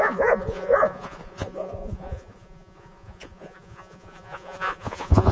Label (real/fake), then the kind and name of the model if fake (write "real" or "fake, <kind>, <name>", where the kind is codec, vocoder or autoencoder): fake, vocoder, Vocos